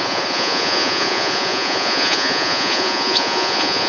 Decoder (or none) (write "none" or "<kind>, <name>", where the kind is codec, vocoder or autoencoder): vocoder, Vocos